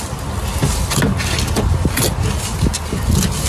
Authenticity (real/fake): real